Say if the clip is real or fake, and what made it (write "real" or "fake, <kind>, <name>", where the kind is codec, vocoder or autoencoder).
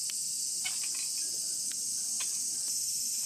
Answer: real